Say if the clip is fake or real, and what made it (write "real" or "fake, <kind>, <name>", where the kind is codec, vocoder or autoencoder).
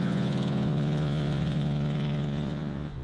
fake, vocoder, Vocos